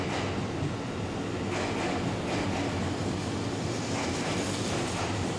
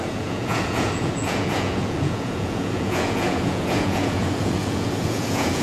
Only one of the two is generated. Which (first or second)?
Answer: second